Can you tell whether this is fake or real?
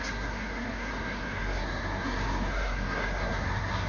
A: fake